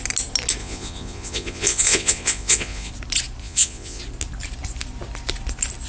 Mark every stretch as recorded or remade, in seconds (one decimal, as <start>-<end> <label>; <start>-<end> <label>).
0.0-0.6 recorded; 0.6-2.9 remade; 2.9-3.4 recorded; 3.4-4.0 remade; 4.0-5.9 recorded

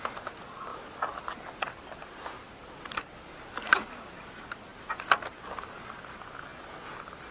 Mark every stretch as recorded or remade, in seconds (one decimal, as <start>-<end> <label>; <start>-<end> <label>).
0.0-7.3 recorded

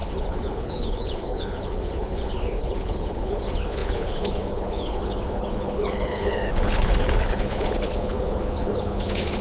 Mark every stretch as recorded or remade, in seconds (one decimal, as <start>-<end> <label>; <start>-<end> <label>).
0.0-9.4 remade

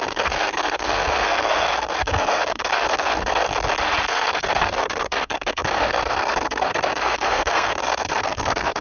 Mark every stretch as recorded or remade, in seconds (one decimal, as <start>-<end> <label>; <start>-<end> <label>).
0.0-3.5 remade; 3.5-4.1 recorded; 4.1-8.8 remade

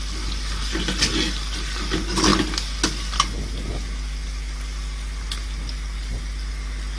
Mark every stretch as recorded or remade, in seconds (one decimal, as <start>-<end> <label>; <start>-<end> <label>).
0.0-7.0 recorded

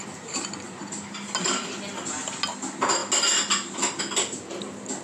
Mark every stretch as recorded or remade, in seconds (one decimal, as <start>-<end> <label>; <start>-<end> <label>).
0.0-5.0 recorded

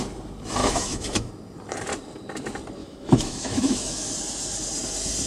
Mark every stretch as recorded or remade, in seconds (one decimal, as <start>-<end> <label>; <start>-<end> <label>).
0.0-0.6 recorded; 0.6-1.3 remade; 1.3-2.8 recorded; 2.8-4.1 remade; 4.1-5.3 recorded

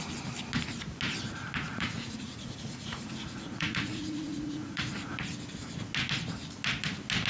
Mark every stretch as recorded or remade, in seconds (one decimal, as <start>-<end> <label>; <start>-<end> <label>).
0.0-1.7 recorded; 1.7-4.9 remade; 4.9-7.3 recorded